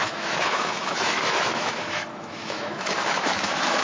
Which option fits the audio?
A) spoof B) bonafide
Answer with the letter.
A